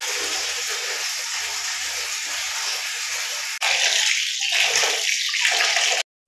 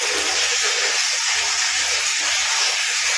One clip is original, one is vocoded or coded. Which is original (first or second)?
first